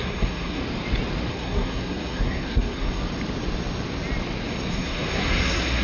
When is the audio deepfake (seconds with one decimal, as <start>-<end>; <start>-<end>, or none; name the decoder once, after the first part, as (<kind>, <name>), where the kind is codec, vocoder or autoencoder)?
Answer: 0.0-0.6 (codec, SNAC); 1.3-3.0; 4.7-5.8